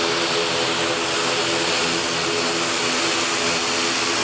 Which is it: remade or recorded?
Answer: recorded